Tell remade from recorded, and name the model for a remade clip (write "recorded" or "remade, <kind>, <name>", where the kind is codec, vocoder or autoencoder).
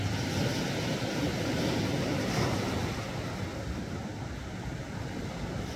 recorded